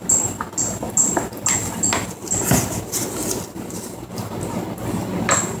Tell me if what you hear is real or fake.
real